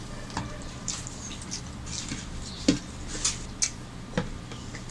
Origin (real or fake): real